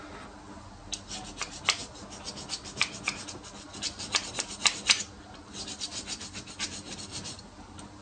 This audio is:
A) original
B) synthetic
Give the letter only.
B